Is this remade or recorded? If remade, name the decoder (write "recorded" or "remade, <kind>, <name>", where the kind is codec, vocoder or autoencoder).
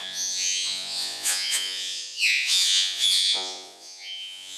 remade, vocoder, Vocos